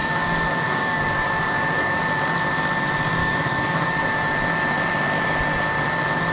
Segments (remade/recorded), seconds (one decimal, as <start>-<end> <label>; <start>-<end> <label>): 0.0-2.0 remade; 2.0-3.2 recorded; 3.2-4.1 remade; 4.1-6.3 recorded